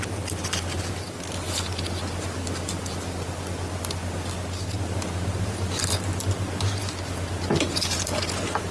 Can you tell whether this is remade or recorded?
recorded